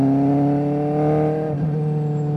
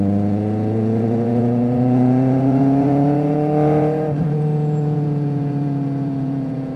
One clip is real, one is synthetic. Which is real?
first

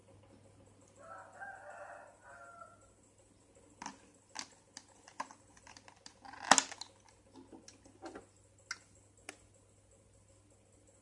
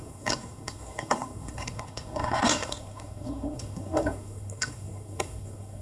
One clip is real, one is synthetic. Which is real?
first